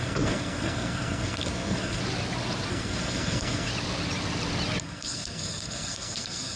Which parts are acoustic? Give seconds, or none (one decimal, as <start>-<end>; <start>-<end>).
2.0-2.7; 3.7-4.8